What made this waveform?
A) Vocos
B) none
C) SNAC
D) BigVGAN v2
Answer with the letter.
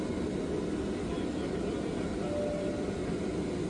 B